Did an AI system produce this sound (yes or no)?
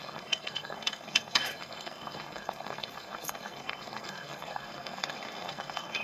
yes